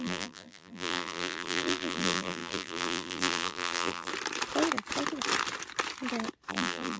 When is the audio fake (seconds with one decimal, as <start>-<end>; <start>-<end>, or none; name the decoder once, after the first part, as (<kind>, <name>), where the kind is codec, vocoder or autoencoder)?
0.0-4.1 (vocoder, BigVGAN v2); 6.5-7.0